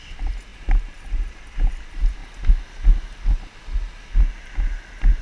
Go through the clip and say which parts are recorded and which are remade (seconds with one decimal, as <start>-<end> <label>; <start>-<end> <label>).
0.0-2.2 remade; 2.2-5.2 recorded